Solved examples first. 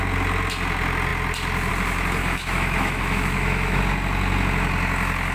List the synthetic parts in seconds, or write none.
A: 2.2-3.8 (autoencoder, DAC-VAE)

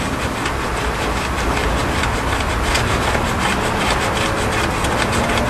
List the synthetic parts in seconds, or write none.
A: none

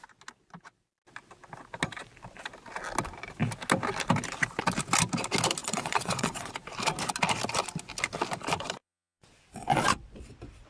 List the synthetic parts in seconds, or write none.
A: 5.6-6.5 (vocoder, Vocos); 8.8-10.2

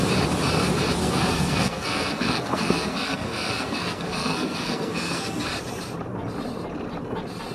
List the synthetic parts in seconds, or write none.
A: 1.0-5.5 (codec, SNAC)